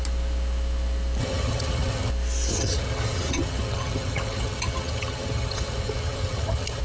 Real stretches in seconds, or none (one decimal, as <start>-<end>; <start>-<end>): 0.0-1.2; 2.1-2.5